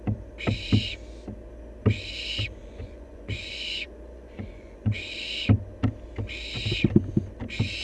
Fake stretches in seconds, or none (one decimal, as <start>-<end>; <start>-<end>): 2.6-5.1